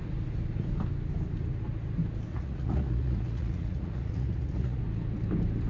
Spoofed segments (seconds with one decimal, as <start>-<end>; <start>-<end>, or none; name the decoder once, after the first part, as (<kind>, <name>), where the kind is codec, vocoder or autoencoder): 2.3-4.8 (vocoder, Vocos)